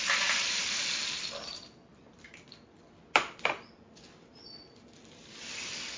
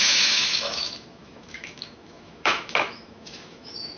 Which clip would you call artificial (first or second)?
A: second